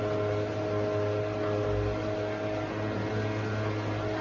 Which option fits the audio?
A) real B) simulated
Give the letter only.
A